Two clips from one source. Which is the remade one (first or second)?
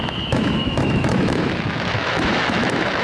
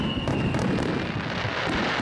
first